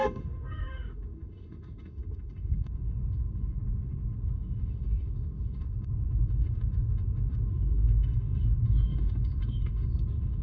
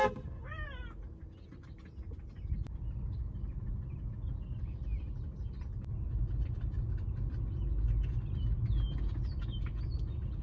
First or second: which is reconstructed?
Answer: first